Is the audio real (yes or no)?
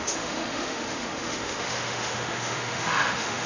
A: no